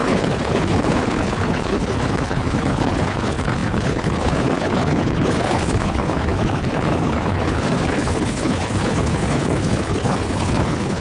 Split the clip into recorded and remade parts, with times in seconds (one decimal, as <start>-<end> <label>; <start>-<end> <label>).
0.0-11.0 remade